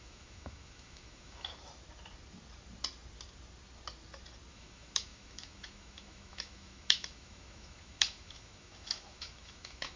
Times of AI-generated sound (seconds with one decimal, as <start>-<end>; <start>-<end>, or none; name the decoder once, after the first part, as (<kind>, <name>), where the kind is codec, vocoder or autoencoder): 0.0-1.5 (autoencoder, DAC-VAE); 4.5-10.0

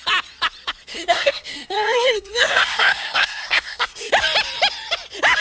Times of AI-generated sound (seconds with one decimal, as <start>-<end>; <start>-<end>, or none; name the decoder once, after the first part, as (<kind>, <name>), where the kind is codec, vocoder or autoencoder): 0.9-4.1 (codec, SNAC)

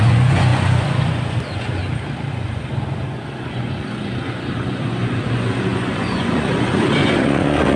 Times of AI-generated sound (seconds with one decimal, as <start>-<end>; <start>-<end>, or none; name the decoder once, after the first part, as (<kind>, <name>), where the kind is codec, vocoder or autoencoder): 0.0-1.8 (vocoder, Vocos); 2.3-7.8

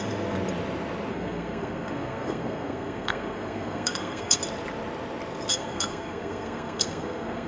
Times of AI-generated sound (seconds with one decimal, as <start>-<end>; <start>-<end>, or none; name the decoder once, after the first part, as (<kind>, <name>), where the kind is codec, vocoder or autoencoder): 1.1-4.4 (codec, SNAC); 5.5-7.5

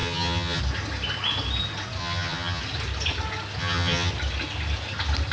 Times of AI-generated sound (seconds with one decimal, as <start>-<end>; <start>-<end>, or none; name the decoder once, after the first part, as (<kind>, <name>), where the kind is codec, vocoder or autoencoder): 0.0-0.6 (vocoder, HiFi-GAN); 2.0-2.6; 3.6-4.1